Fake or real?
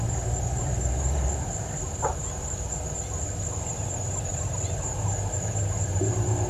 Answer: fake